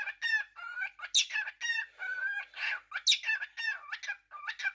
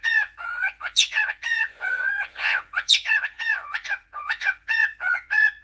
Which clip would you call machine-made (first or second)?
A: second